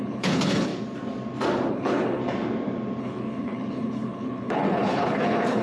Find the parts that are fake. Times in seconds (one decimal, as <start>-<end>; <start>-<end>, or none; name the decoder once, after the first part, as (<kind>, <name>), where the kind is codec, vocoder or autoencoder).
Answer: 0.0-0.7 (codec, HILCodec); 1.7-2.2; 3.0-5.6